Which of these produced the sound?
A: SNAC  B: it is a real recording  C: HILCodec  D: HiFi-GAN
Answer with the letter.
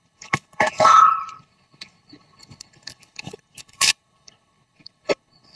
C